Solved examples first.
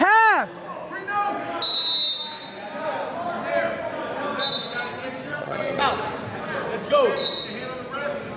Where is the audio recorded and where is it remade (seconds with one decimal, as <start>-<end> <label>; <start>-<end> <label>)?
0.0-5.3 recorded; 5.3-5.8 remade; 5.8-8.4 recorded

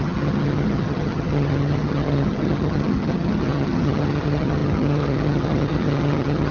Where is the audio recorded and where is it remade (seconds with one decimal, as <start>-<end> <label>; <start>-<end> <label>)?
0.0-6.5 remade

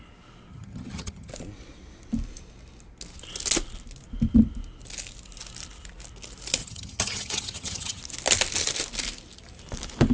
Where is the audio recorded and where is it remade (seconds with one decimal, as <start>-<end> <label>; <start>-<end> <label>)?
0.0-0.5 recorded; 0.5-1.3 remade; 1.3-6.6 recorded; 6.6-8.0 remade; 8.0-10.1 recorded

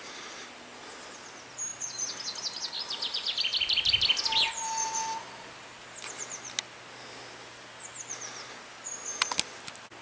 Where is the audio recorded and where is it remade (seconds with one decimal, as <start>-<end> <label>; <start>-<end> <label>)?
0.0-10.0 recorded